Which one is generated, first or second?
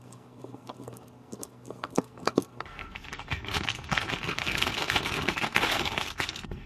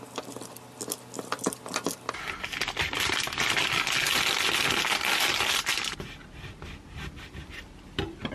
first